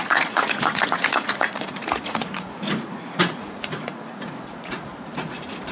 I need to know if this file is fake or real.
fake